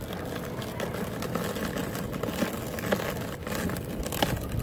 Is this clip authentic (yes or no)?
yes